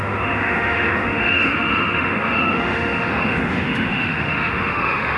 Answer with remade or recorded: remade